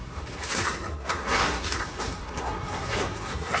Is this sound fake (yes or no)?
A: yes